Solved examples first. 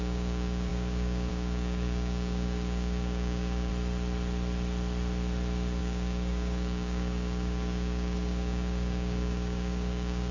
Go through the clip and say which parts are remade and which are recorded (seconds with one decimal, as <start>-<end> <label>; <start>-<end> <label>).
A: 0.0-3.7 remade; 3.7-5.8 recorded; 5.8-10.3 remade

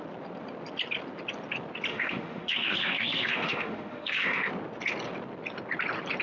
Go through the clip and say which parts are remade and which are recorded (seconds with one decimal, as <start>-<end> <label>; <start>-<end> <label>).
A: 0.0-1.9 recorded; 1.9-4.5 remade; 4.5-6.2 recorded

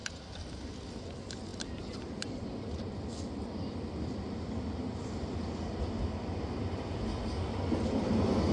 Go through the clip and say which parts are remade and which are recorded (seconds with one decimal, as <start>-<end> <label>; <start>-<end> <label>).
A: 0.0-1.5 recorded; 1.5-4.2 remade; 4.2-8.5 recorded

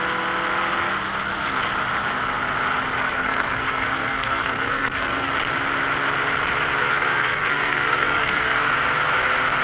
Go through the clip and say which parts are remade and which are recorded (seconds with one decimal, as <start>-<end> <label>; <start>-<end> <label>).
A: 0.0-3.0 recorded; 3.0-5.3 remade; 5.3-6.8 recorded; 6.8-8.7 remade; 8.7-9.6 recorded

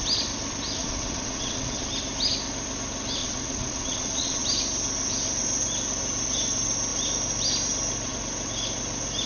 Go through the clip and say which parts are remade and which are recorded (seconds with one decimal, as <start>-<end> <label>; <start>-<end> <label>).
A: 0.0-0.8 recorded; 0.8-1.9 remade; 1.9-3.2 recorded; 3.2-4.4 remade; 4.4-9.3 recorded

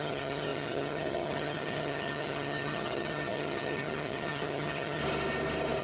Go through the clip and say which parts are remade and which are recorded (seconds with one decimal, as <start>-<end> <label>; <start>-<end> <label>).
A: 0.0-5.0 remade; 5.0-5.8 recorded